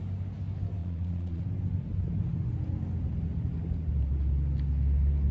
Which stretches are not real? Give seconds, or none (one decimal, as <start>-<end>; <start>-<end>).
0.8-1.4